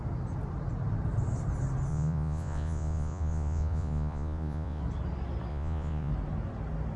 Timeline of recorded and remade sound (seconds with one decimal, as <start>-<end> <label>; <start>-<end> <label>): 0.0-1.9 recorded; 1.9-4.8 remade; 4.8-5.5 recorded; 5.5-6.1 remade; 6.1-7.0 recorded